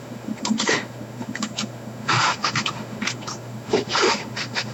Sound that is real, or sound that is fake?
fake